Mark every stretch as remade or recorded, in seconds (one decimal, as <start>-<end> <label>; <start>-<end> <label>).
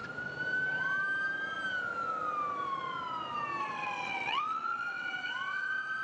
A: 0.0-3.6 recorded; 3.6-6.0 remade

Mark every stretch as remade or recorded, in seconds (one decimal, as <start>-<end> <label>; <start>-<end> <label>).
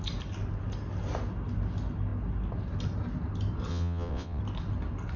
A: 0.0-3.7 recorded; 3.7-4.4 remade; 4.4-5.2 recorded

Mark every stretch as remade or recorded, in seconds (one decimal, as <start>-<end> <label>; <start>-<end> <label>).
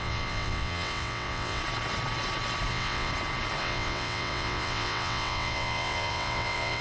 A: 0.0-1.6 remade; 1.6-2.7 recorded; 2.7-3.1 remade; 3.1-3.6 recorded; 3.6-6.8 remade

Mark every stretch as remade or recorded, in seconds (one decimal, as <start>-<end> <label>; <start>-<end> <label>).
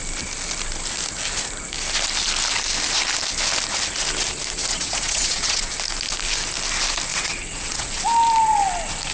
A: 0.0-4.7 recorded; 4.7-5.7 remade; 5.7-7.1 recorded; 7.1-7.9 remade; 7.9-9.1 recorded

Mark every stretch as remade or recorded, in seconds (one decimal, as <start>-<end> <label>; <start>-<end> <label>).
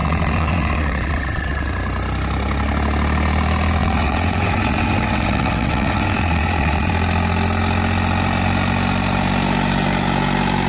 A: 0.0-1.7 remade; 1.7-3.8 recorded; 3.8-6.9 remade; 6.9-10.7 recorded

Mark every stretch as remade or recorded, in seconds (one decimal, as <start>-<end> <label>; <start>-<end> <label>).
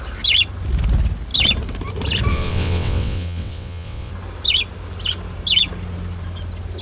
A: 0.0-2.3 recorded; 2.3-4.1 remade; 4.1-6.8 recorded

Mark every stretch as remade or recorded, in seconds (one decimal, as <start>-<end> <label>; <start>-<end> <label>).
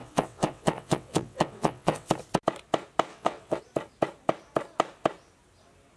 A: 0.0-2.1 remade; 2.1-3.1 recorded; 3.1-3.6 remade; 3.6-6.0 recorded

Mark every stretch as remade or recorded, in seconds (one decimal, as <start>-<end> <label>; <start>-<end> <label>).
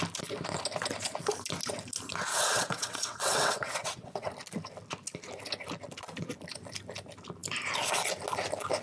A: 0.0-2.3 recorded; 2.3-4.3 remade; 4.3-8.8 recorded